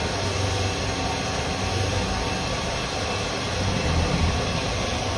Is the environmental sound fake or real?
real